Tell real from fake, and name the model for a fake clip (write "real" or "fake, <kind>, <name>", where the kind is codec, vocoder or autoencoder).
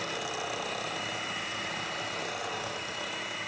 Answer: real